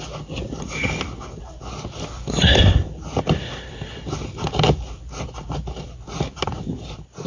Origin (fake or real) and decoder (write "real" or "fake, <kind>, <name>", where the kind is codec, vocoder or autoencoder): real